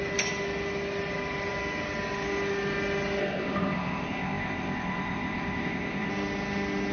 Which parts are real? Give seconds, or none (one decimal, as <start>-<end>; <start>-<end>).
0.0-3.2; 6.1-6.9

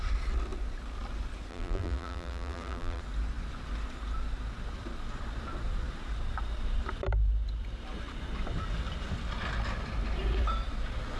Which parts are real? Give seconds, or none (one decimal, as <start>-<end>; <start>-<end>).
0.0-1.5; 3.0-11.2

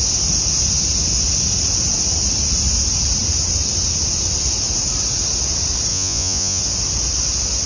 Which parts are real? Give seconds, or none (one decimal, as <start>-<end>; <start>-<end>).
0.0-5.9; 6.6-7.7

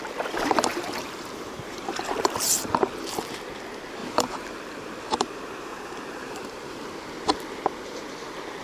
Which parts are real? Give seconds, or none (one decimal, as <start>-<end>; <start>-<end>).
0.0-0.7; 2.7-4.0; 6.8-8.6

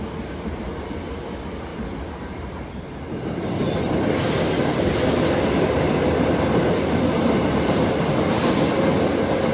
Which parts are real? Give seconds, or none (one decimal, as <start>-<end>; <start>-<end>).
0.0-9.5

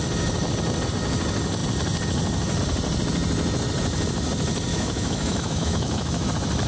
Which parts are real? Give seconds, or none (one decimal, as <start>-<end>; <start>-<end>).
0.0-4.7; 6.3-6.7

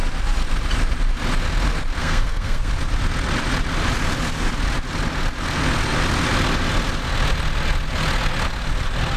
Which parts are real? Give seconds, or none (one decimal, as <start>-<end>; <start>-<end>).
0.0-2.0; 2.7-9.2

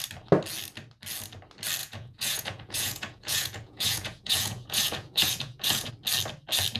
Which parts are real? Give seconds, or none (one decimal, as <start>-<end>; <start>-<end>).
0.0-1.8; 5.9-6.8